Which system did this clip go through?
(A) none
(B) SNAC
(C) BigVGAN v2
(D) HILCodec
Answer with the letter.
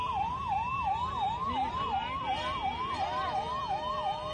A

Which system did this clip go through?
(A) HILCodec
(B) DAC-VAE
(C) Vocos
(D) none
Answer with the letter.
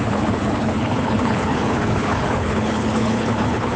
A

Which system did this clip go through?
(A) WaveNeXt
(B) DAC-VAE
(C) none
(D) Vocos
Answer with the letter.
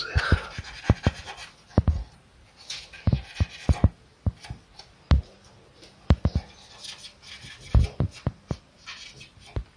C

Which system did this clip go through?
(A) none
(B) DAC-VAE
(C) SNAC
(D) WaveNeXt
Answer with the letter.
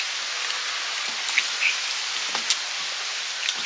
A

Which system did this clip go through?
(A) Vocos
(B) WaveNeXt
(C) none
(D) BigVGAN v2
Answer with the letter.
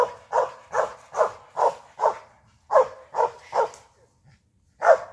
C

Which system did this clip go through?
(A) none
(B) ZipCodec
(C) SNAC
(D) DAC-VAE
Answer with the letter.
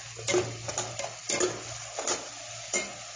A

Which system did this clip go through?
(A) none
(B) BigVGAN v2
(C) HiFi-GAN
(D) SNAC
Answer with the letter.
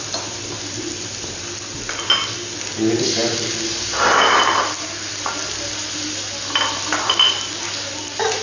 A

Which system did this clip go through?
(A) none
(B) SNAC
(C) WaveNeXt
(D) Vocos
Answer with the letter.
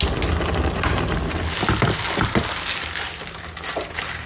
A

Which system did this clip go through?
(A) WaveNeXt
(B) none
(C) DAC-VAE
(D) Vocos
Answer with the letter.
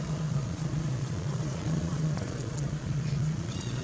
D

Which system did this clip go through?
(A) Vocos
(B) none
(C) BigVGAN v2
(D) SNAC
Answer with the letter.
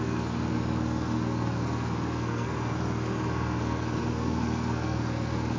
D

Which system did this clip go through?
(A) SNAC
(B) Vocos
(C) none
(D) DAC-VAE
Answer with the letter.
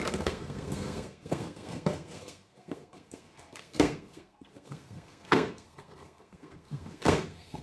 A